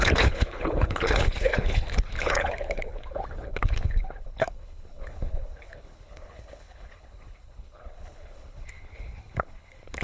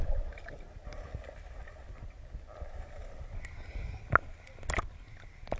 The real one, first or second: second